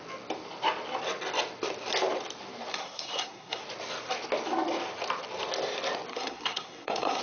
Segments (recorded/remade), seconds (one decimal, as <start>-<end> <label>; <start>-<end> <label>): 0.0-2.7 recorded; 2.7-3.6 remade; 3.6-6.1 recorded; 6.1-7.2 remade